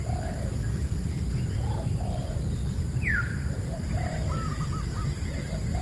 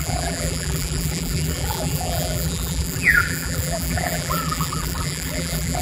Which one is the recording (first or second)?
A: first